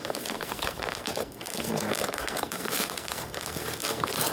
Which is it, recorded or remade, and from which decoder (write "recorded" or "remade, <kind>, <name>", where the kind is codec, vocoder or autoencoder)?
remade, codec, SNAC